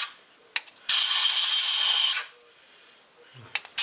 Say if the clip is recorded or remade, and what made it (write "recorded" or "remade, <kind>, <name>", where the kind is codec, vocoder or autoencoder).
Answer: recorded